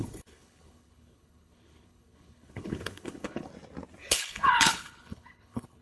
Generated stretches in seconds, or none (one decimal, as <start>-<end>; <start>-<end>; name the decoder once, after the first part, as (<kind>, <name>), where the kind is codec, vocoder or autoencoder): 0.0-3.5 (codec, HILCodec); 4.0-5.8